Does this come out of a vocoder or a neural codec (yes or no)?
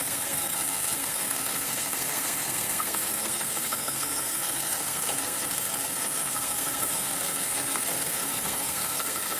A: yes